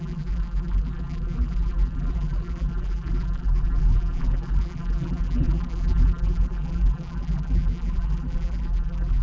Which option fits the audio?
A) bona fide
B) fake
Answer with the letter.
B